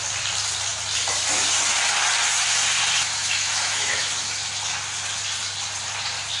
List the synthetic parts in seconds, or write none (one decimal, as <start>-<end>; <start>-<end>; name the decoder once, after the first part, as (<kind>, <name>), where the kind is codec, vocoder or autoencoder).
3.2-4.1 (autoencoder, DAC-VAE)